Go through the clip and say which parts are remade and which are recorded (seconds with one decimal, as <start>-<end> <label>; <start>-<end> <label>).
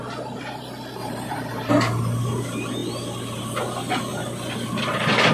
0.0-1.0 recorded; 1.0-1.7 remade; 1.7-5.3 recorded